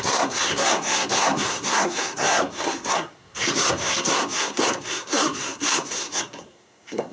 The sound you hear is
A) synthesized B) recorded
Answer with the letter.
A